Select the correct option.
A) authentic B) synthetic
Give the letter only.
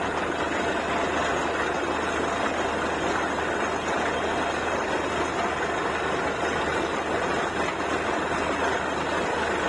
A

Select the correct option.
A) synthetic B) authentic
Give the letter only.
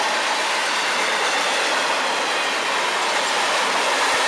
B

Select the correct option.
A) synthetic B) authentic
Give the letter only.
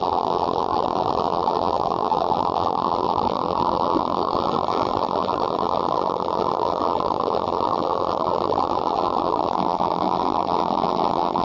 A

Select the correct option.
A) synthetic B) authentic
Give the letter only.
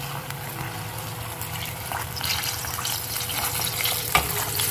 B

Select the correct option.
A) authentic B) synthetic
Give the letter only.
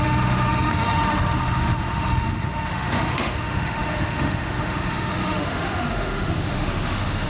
B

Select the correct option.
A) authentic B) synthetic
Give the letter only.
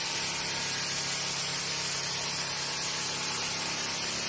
A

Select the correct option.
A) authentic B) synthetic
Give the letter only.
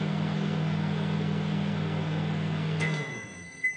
B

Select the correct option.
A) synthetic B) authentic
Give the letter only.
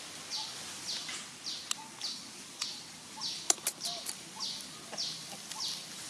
B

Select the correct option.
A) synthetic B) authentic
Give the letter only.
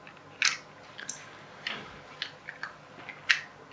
B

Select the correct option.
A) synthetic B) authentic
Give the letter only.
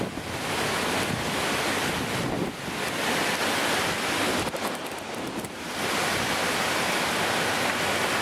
B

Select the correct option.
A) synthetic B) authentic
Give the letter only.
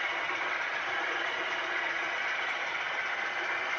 B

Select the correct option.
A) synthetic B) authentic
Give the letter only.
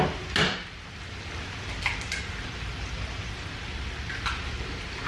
B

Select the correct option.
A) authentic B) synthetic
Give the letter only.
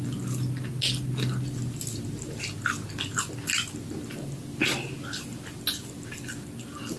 A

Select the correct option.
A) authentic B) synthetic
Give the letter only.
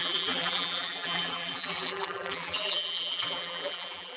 B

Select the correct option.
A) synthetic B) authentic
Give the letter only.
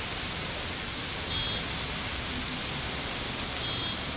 B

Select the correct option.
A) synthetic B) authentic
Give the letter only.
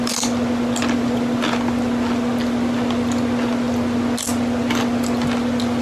B